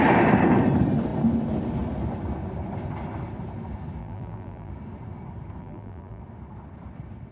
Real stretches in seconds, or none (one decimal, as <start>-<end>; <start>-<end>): 0.0-4.0; 4.7-5.6; 6.2-7.3